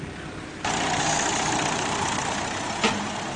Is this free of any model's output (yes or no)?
yes